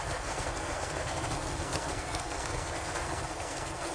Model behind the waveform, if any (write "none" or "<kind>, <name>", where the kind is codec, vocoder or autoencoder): codec, SNAC